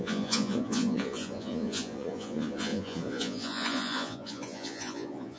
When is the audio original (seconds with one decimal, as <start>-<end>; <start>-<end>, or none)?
none